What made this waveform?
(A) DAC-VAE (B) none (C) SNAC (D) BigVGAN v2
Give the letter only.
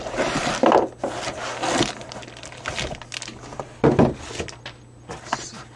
B